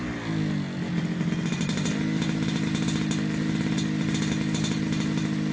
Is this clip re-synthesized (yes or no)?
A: no